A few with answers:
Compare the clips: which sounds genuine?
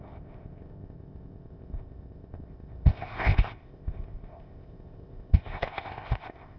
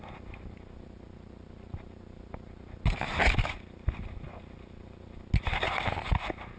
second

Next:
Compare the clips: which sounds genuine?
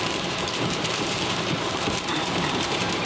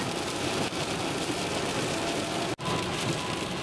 second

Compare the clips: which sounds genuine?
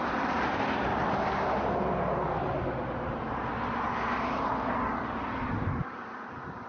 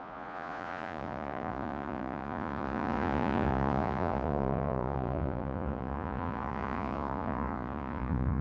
first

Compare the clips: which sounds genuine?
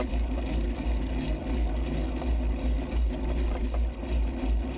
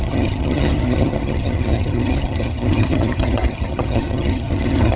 first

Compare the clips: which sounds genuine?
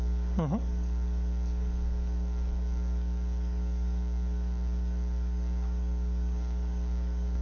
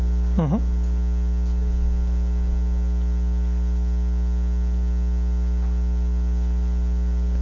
second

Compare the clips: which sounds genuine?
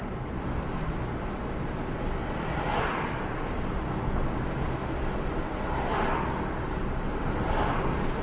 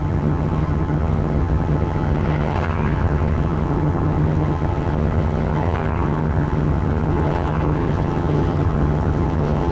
first